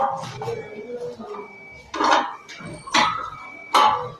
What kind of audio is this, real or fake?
real